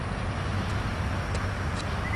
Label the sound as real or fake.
real